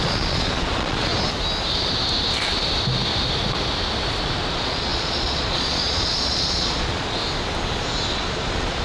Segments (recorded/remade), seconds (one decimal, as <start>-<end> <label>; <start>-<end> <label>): 0.0-1.1 remade; 1.1-4.5 recorded; 4.5-7.2 remade; 7.2-8.1 recorded; 8.1-8.8 remade